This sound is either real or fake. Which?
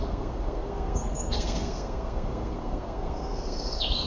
fake